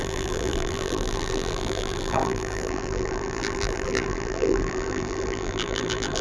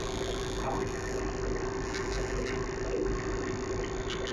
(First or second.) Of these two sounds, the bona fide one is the second